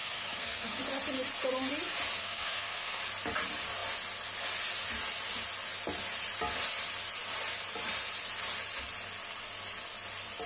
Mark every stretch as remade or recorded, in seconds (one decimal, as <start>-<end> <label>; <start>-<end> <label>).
0.0-0.8 remade; 0.8-2.2 recorded; 2.2-3.0 remade; 3.0-10.5 recorded